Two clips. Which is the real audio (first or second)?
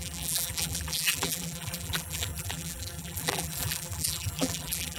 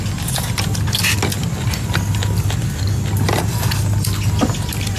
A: second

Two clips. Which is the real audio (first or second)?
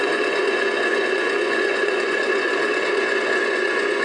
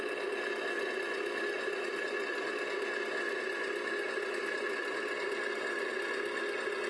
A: second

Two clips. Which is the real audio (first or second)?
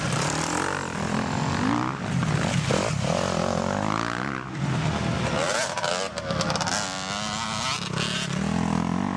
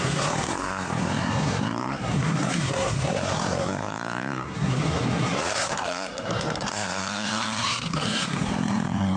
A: first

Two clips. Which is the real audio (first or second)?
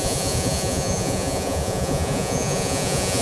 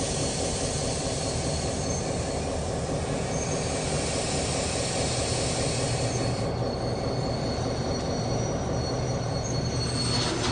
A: second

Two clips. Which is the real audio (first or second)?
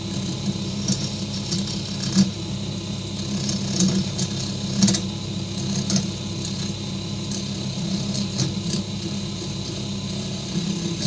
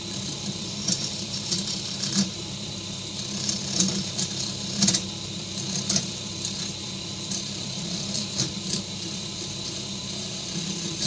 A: first